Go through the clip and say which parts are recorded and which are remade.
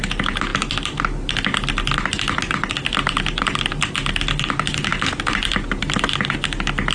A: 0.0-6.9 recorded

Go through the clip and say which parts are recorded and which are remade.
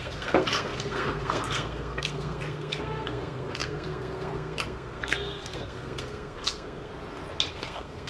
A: 0.0-6.9 remade; 6.9-7.5 recorded; 7.5-8.1 remade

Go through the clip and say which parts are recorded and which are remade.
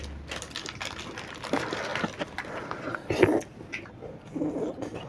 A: 0.0-5.1 recorded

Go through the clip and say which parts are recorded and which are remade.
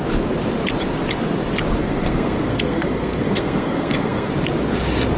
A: 0.0-1.8 recorded; 1.8-4.3 remade; 4.3-5.2 recorded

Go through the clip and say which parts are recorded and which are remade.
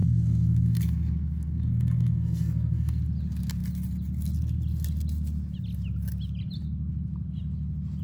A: 0.0-3.0 remade; 3.0-8.0 recorded